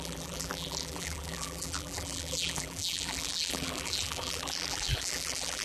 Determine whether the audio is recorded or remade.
remade